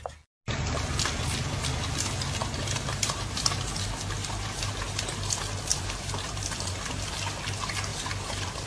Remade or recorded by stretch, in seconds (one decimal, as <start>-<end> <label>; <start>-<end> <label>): 0.0-2.4 recorded; 2.4-3.6 remade; 3.6-4.2 recorded; 4.2-5.0 remade; 5.0-5.7 recorded; 5.7-7.1 remade; 7.1-7.9 recorded; 7.9-8.7 remade